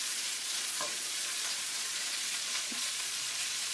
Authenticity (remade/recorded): remade